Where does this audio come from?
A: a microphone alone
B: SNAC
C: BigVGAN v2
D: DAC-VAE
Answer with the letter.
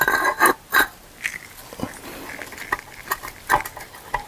A